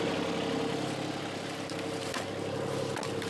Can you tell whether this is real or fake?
real